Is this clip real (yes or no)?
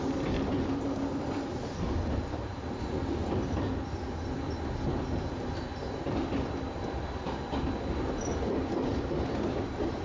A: yes